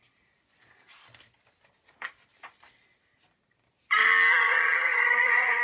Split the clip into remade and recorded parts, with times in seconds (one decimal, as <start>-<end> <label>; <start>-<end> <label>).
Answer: 0.0-4.4 recorded; 4.4-5.6 remade